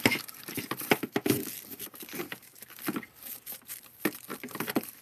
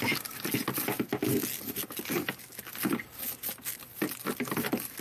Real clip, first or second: second